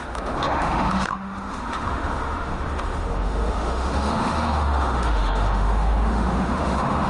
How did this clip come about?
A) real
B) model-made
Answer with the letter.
B